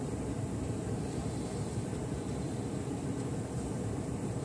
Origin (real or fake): fake